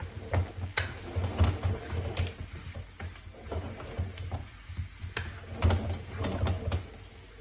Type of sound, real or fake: real